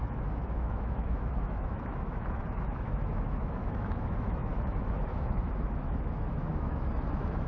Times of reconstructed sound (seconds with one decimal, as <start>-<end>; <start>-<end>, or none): 0.0-7.5